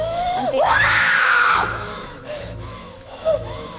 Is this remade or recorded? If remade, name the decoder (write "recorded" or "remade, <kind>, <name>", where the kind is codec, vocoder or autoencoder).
remade, autoencoder, DAC-VAE